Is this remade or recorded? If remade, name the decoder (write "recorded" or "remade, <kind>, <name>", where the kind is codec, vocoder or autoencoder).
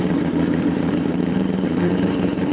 remade, vocoder, BigVGAN v2